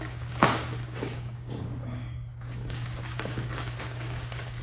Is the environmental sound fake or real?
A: fake